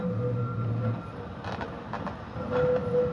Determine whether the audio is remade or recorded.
recorded